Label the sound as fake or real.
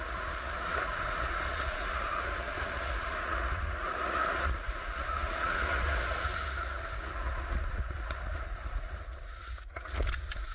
fake